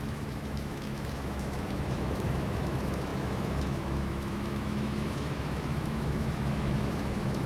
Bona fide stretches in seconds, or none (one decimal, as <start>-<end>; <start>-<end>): none